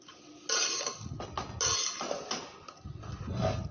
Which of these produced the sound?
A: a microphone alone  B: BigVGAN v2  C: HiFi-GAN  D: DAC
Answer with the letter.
A